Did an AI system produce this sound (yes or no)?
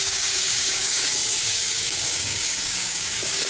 yes